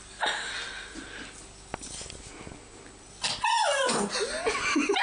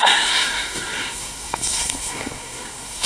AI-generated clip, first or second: second